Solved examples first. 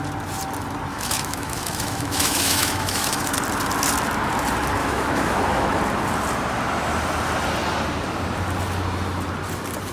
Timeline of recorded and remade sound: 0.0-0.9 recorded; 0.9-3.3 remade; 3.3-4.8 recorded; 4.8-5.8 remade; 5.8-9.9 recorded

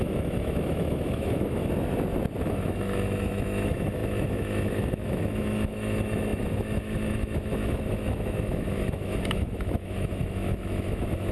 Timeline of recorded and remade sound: 0.0-1.6 remade; 1.6-2.4 recorded; 2.4-11.3 remade

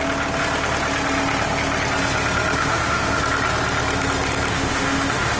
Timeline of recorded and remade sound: 0.0-2.6 recorded; 2.6-3.2 remade; 3.2-4.5 recorded; 4.5-5.4 remade